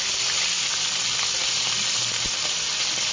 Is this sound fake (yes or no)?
no